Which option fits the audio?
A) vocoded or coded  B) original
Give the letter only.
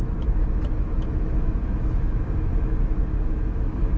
A